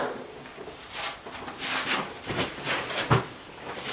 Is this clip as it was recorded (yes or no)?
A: yes